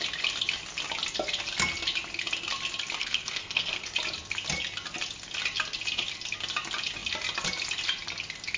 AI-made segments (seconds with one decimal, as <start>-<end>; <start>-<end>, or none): 3.0-3.8